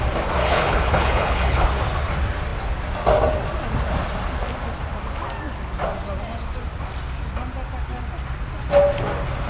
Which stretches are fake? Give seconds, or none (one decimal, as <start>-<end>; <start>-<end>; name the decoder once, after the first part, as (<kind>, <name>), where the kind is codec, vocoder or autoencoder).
0.4-1.6 (codec, HILCodec)